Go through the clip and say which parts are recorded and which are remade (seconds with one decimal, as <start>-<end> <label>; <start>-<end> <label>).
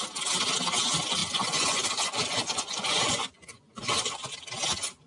0.0-1.2 recorded; 1.2-4.3 remade; 4.3-5.1 recorded